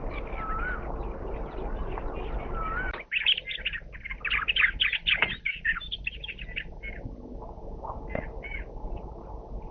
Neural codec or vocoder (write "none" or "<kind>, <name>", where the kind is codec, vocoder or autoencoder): none